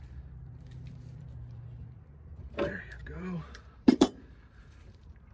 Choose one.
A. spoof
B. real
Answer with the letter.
A